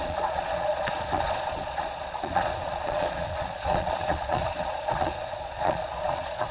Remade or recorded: remade